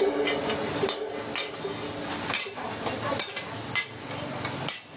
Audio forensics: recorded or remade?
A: recorded